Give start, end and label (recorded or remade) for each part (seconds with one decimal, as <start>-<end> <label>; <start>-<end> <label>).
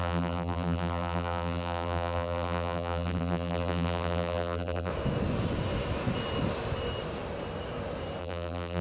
0.0-4.9 remade; 4.9-8.2 recorded; 8.2-8.8 remade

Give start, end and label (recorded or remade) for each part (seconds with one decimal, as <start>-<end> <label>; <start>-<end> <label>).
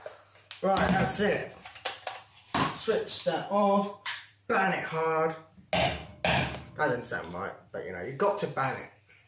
0.0-1.4 recorded; 1.4-4.9 remade; 4.9-9.3 recorded